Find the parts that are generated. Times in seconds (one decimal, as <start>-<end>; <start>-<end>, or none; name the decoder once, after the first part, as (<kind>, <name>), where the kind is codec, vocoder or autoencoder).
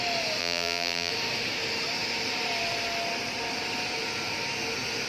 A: 0.4-1.1 (vocoder, BigVGAN v2)